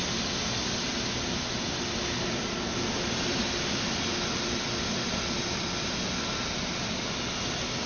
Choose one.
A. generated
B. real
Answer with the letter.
B